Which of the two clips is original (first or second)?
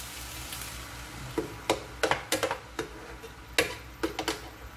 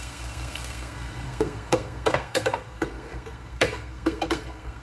first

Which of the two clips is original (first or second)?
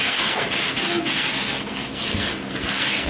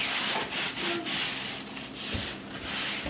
second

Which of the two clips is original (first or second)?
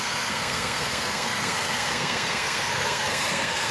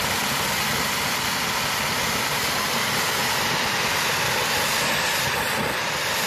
second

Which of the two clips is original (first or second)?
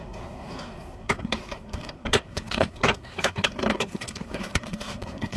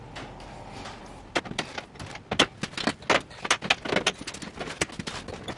second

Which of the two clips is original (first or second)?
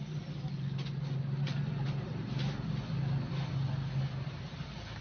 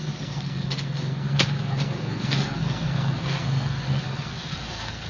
first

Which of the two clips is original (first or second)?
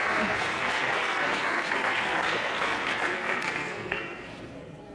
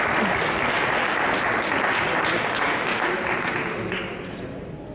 second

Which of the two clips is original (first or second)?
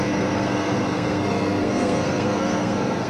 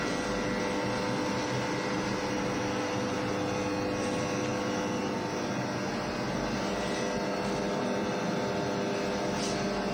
second